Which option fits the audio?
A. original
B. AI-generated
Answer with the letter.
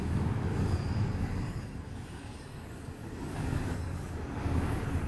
B